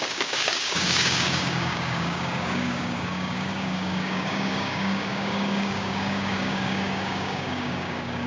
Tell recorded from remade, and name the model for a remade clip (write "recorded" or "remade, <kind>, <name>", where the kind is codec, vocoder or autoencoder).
remade, codec, DAC